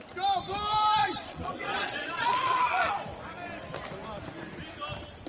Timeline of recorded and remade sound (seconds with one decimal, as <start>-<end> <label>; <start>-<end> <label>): 0.0-1.0 recorded; 1.0-2.9 remade; 2.9-5.3 recorded